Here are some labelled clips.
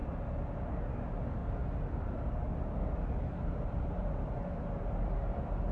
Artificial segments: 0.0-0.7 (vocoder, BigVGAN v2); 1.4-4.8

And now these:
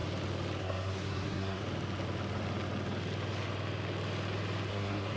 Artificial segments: 0.6-1.6 (codec, SNAC); 4.7-5.2

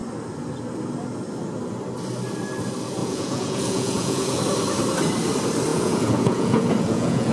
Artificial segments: 3.0-4.4 (vocoder, Vocos); 5.7-7.3

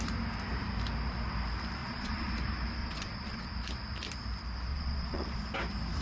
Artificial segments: 1.8-2.3 (vocoder, Vocos); 2.8-3.5; 4.7-5.5

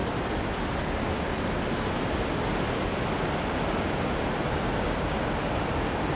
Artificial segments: none

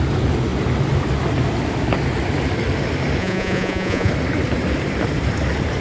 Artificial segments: 3.2-4.1 (vocoder, Vocos)

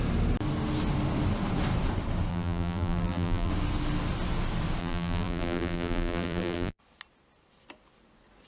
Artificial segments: 2.3-3.5 (vocoder, BigVGAN v2); 4.8-6.8